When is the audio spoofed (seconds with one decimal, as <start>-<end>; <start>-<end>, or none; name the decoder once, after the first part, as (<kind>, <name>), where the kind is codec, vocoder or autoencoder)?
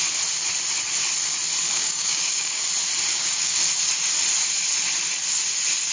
1.7-2.6 (codec, DAC); 3.1-3.7